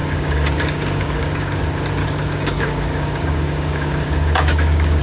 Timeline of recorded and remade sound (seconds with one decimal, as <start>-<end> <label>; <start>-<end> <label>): 0.0-1.6 remade; 1.6-2.0 recorded; 2.0-5.0 remade